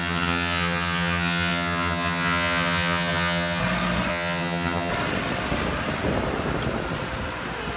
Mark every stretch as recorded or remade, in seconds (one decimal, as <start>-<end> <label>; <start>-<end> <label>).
0.0-3.6 remade; 3.6-4.1 recorded; 4.1-4.9 remade; 4.9-7.8 recorded